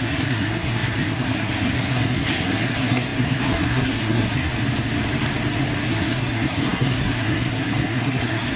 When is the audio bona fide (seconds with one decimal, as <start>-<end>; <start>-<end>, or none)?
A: 4.5-5.9